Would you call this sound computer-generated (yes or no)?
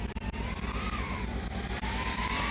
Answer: yes